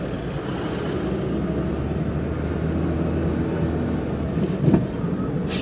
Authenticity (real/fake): real